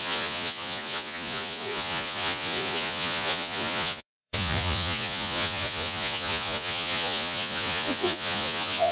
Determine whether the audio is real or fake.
fake